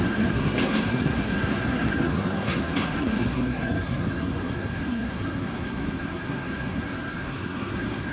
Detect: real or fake fake